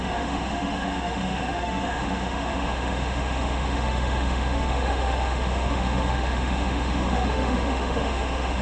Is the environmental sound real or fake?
fake